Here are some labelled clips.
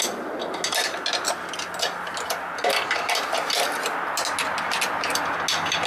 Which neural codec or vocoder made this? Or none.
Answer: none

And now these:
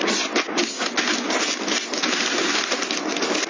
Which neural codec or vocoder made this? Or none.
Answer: none